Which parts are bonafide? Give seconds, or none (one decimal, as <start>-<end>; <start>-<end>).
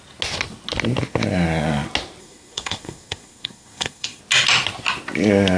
0.0-2.2; 4.2-5.6